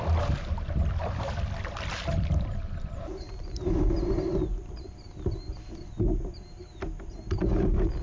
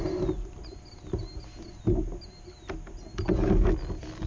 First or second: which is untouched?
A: second